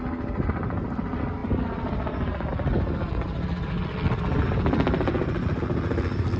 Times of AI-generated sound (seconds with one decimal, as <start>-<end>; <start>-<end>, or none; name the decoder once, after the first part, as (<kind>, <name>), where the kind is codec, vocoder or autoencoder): none